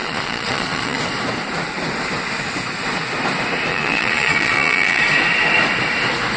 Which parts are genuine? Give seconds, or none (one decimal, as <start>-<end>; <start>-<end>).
1.0-3.7; 5.0-6.4